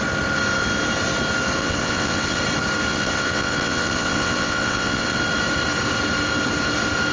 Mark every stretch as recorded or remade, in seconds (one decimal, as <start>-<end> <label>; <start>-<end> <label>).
0.0-1.6 recorded; 1.6-2.4 remade; 2.4-2.9 recorded; 2.9-5.2 remade; 5.2-7.1 recorded